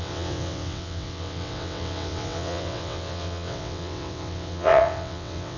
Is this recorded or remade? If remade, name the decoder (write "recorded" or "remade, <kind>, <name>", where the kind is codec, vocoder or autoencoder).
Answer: remade, vocoder, WaveNeXt